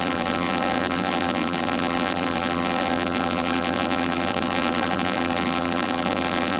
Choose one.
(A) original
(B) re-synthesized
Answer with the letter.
B